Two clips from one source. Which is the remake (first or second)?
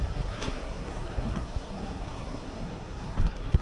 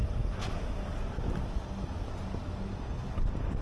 first